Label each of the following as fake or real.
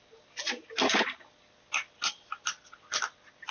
real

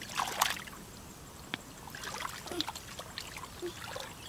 real